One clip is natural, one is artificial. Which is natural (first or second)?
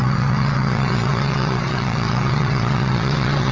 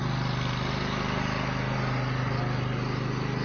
second